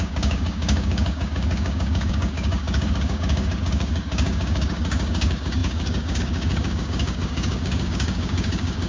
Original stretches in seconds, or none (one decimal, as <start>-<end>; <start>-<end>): none